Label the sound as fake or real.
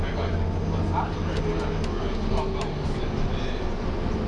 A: real